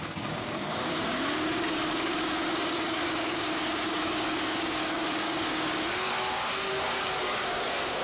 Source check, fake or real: fake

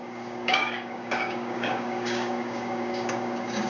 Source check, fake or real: fake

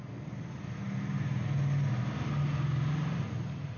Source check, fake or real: real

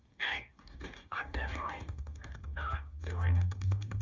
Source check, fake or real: fake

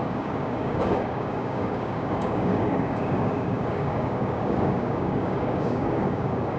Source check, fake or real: fake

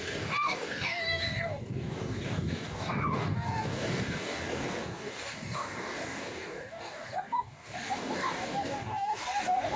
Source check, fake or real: fake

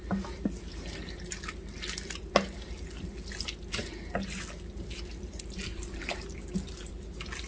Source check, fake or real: real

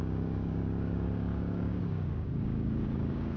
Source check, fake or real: fake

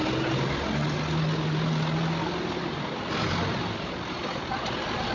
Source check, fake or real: real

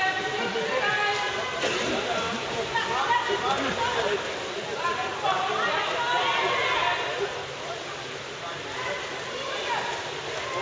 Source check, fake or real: real